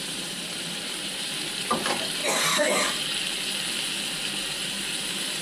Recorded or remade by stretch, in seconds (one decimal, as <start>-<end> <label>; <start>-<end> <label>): 0.0-2.2 remade; 2.2-5.4 recorded